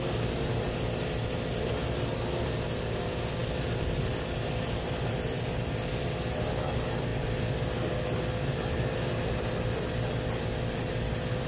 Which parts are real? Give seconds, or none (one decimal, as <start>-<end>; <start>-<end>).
0.0-11.5